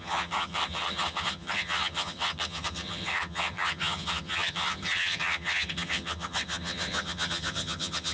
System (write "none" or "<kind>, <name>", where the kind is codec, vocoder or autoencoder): vocoder, HiFi-GAN